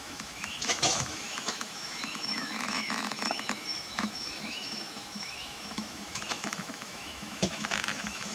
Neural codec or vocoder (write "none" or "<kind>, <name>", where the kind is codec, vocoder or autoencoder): autoencoder, DAC-VAE